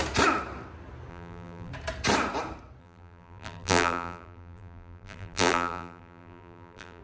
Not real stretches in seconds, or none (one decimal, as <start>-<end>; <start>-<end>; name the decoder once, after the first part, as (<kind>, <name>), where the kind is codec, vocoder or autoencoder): 1.1-1.7 (vocoder, BigVGAN v2); 2.8-7.0